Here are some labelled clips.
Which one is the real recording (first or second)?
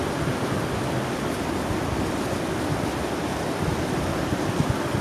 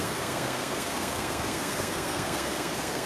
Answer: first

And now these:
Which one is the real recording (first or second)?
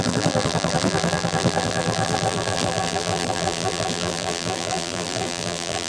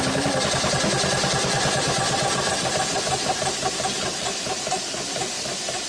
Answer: second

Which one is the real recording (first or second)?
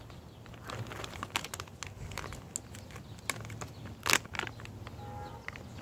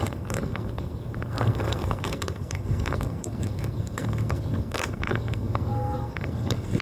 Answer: first